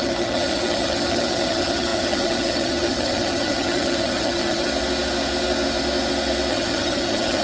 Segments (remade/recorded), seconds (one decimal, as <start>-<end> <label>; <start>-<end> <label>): 0.0-4.7 remade; 4.7-6.5 recorded; 6.5-7.4 remade